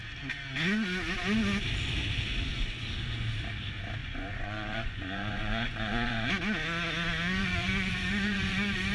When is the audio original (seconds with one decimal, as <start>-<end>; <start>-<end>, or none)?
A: 0.0-4.0; 6.3-7.4